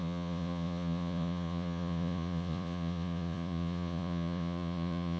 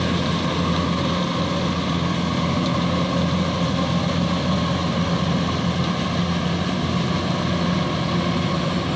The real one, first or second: second